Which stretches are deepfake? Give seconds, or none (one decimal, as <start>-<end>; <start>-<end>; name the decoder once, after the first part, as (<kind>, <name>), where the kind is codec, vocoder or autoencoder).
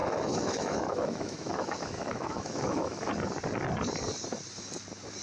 0.0-3.1 (autoencoder, DAC-VAE)